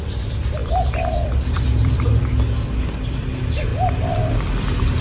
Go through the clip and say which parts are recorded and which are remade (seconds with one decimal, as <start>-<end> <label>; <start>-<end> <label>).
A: 0.0-0.6 recorded; 0.6-2.1 remade; 2.1-3.7 recorded; 3.7-5.0 remade